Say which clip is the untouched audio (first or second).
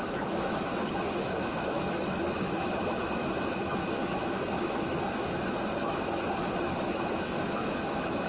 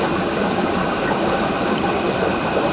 second